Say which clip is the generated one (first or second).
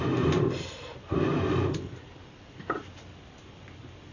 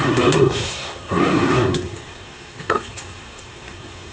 second